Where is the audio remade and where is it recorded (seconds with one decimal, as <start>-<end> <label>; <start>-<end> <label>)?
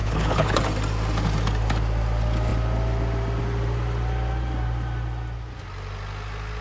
0.0-0.6 remade; 0.6-6.6 recorded